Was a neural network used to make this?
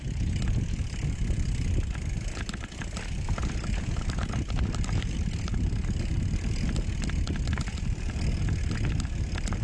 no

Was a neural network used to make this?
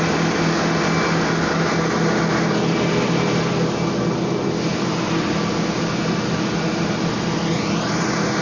no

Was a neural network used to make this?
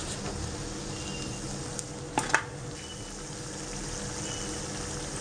no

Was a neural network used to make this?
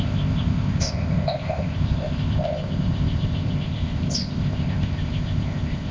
yes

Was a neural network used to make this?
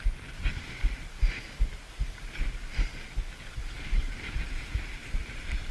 no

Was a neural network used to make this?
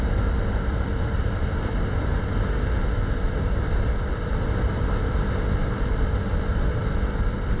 no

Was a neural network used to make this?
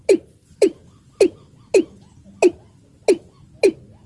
no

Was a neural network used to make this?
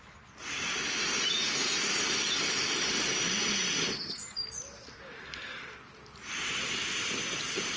no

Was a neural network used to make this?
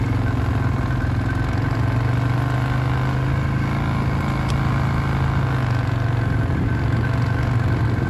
no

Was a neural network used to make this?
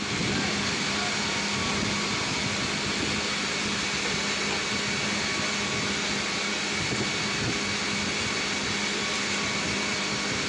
no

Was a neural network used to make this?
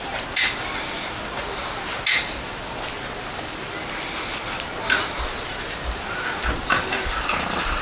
no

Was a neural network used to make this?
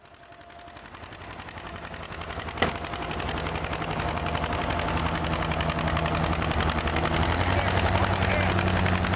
no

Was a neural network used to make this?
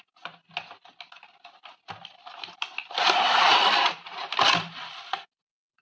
no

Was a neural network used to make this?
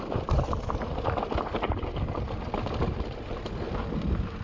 no